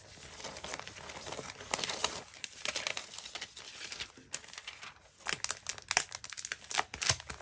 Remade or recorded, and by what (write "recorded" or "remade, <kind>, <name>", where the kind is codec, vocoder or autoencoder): recorded